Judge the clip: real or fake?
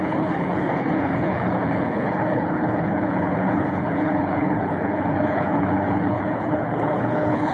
fake